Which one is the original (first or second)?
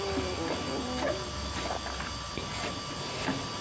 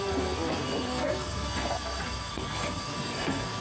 first